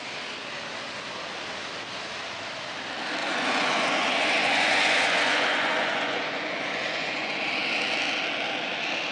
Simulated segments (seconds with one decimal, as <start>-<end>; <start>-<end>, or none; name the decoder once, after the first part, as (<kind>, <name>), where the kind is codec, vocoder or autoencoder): 3.2-7.4 (vocoder, Vocos)